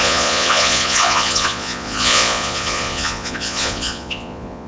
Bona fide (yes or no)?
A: no